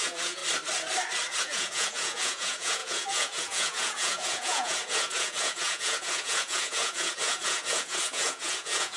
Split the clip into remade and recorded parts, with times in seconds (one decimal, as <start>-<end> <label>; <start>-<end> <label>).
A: 0.0-0.4 remade; 0.4-1.4 recorded; 1.4-9.0 remade